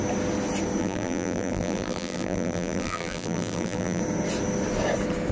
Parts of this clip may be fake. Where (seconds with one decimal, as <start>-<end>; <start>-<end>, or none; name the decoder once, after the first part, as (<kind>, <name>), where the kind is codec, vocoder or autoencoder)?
0.8-4.0 (vocoder, BigVGAN v2)